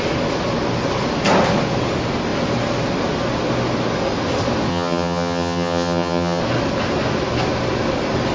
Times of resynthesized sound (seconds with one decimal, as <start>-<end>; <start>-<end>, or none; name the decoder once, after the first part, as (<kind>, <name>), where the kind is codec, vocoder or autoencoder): 4.7-6.4 (vocoder, HiFi-GAN)